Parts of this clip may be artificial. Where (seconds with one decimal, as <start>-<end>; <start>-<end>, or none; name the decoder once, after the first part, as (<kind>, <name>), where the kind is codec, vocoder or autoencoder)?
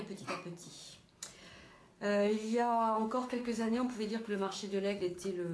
2.1-5.0 (autoencoder, DAC-VAE)